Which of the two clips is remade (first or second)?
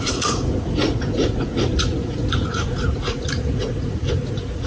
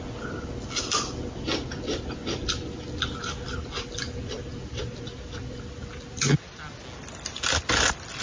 first